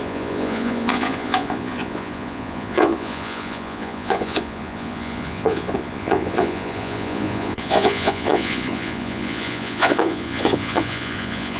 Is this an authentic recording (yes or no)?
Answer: no